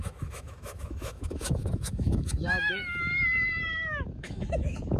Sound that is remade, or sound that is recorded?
remade